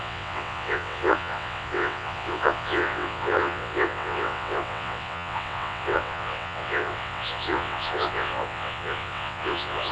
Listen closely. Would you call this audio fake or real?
fake